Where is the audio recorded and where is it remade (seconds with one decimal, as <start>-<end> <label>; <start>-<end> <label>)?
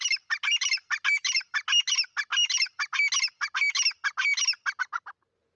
0.0-0.5 recorded; 0.5-1.8 remade; 1.8-2.3 recorded; 2.3-3.1 remade; 3.1-5.6 recorded